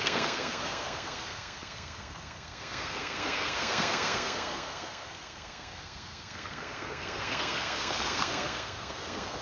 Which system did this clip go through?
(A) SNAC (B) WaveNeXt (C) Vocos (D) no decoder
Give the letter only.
A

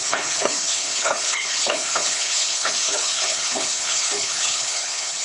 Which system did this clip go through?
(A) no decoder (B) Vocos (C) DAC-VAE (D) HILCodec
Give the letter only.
D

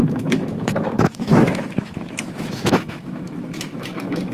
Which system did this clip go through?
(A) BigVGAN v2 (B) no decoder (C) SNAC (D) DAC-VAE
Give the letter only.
D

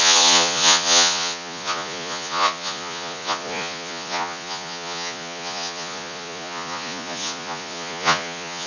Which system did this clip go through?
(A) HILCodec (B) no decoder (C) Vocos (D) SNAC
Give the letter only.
C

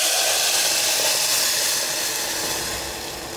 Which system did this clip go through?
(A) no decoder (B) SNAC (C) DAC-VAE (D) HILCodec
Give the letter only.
A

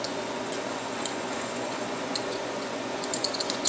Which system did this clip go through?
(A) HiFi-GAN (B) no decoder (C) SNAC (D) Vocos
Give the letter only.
D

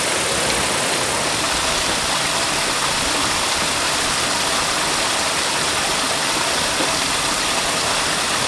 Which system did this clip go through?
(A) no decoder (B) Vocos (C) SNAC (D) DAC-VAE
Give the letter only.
A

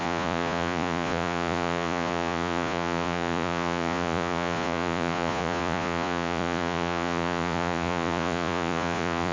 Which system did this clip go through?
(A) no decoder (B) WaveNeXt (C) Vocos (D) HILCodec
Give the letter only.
C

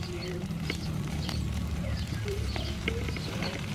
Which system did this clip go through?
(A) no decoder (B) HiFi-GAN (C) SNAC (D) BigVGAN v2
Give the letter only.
D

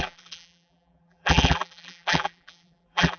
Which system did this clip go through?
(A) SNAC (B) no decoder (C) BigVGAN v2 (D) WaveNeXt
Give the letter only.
C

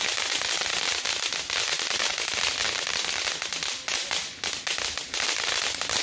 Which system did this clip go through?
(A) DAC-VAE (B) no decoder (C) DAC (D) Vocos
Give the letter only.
B